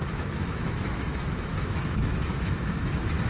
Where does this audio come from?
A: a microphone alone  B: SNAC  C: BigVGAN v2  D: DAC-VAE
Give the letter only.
D